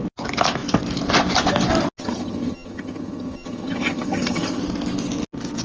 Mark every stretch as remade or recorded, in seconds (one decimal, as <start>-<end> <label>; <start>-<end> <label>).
0.0-2.0 recorded; 2.0-4.6 remade; 4.6-5.6 recorded